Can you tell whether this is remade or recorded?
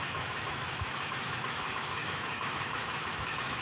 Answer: remade